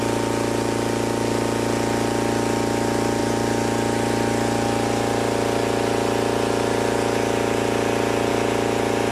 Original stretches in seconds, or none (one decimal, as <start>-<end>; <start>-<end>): 0.0-9.1